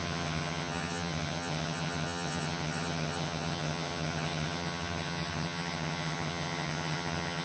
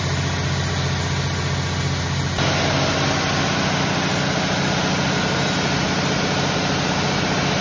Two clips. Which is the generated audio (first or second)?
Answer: first